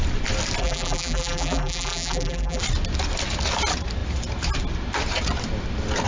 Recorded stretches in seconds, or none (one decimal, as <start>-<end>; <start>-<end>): 0.0-0.6; 2.6-6.1